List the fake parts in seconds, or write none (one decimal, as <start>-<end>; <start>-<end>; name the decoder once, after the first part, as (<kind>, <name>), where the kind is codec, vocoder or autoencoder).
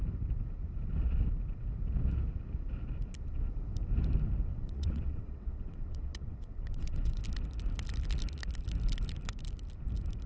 4.5-7.2 (vocoder, WaveNeXt)